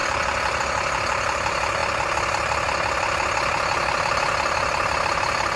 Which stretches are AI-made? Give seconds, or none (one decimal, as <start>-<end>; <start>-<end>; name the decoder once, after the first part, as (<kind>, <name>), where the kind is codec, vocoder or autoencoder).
none